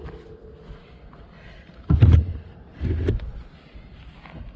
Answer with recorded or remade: recorded